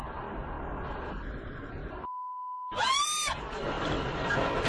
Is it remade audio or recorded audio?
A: recorded